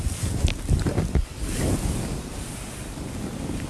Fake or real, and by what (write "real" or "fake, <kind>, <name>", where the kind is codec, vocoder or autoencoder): real